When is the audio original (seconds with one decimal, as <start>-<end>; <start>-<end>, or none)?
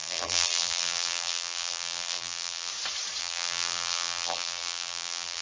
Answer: 2.7-3.2